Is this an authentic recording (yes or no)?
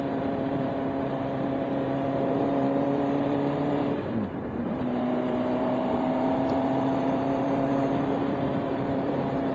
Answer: no